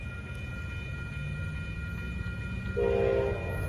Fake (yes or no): no